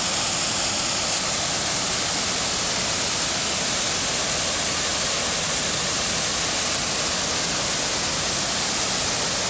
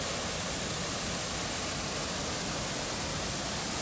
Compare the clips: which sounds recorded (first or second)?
first